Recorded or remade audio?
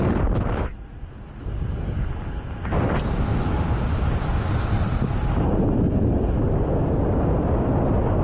remade